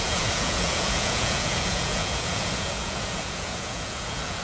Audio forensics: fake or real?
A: fake